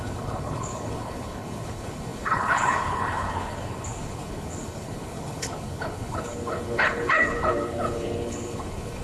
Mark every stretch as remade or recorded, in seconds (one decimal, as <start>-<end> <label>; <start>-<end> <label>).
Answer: 0.0-9.0 remade